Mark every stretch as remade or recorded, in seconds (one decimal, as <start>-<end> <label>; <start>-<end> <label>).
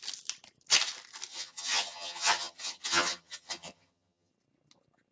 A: 0.0-1.3 recorded; 1.3-4.3 remade; 4.3-5.1 recorded